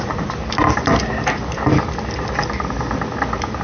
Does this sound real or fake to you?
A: real